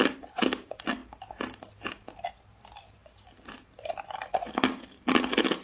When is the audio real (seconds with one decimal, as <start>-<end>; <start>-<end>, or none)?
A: 1.0-2.3; 3.0-4.2